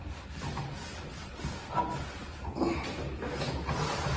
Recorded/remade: recorded